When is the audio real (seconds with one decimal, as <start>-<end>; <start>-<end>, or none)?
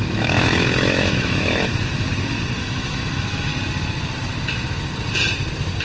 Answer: 2.1-2.6; 3.5-5.8